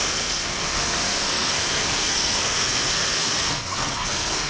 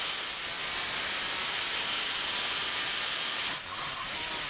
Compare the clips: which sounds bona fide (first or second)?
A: second